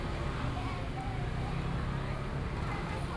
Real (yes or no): yes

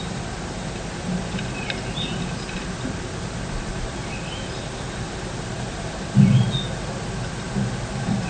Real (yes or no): yes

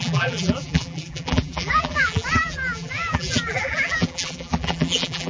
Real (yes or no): no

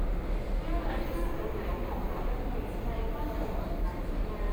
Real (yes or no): yes